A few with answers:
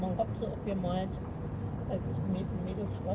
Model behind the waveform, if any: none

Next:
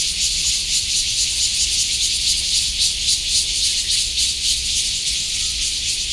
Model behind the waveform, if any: none